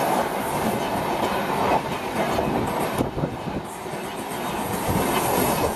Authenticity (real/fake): real